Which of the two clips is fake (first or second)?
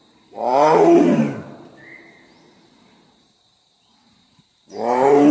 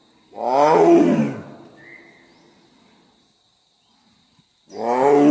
first